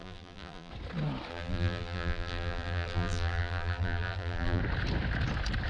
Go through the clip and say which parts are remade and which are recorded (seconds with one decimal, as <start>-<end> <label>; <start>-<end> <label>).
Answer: 0.0-0.7 remade; 0.7-1.3 recorded; 1.3-4.6 remade; 4.6-5.7 recorded